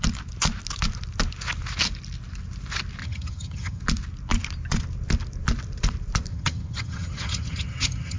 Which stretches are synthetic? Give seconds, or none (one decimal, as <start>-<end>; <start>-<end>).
3.0-3.8; 6.3-8.2